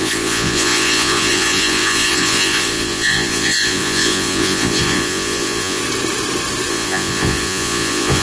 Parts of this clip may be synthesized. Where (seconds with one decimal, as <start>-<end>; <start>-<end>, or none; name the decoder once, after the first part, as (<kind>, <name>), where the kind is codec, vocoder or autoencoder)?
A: 0.0-5.8 (vocoder, Vocos); 6.7-8.2